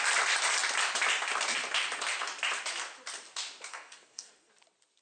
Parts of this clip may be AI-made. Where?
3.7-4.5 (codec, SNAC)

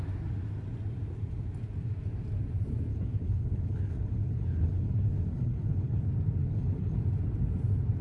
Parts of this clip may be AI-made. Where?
2.9-6.0 (codec, HILCodec); 6.4-7.0

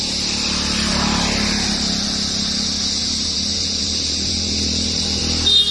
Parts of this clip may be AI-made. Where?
3.0-5.2 (vocoder, BigVGAN v2)

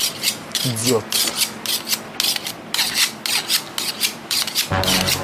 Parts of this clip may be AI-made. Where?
0.0-0.8 (vocoder, BigVGAN v2); 3.9-5.2

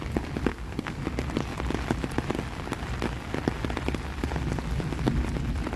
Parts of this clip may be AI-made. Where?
0.5-1.0 (codec, SNAC)